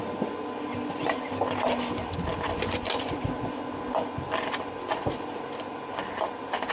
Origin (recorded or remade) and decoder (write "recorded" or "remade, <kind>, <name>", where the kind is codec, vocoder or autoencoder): recorded